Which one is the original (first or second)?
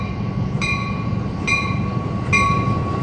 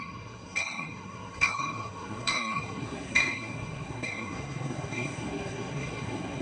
first